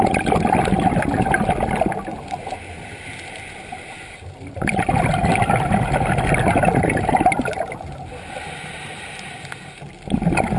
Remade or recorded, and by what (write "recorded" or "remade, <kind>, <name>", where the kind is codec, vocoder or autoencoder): recorded